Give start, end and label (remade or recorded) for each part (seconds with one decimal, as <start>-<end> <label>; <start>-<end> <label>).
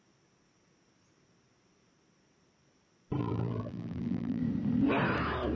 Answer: 0.0-3.2 recorded; 3.2-4.4 remade; 4.4-5.6 recorded